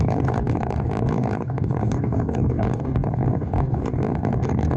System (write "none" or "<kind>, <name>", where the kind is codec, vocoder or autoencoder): codec, DAC